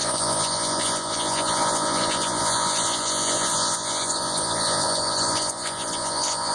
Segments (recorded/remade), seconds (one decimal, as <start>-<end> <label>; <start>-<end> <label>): 0.0-6.5 remade